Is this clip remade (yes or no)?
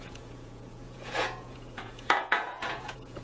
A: yes